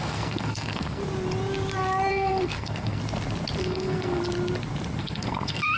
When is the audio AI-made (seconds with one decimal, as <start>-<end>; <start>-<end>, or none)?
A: 0.0-1.0; 2.1-3.0; 3.6-4.2; 5.0-5.8